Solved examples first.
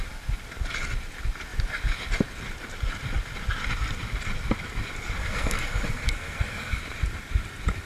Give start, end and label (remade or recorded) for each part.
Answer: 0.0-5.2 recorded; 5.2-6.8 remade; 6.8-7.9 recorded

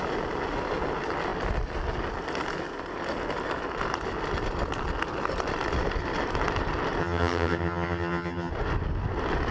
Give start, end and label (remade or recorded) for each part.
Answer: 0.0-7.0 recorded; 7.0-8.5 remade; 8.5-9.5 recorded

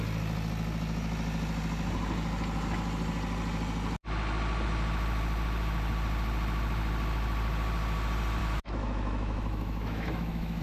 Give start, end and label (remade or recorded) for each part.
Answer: 0.0-8.4 recorded; 8.4-10.6 remade

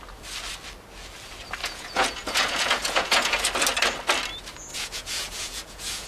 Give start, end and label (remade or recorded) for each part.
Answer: 0.0-1.6 recorded; 1.6-3.4 remade; 3.4-4.7 recorded; 4.7-6.1 remade